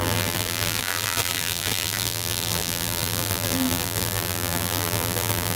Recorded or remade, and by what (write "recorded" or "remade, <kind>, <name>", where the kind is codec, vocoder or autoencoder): remade, vocoder, BigVGAN v2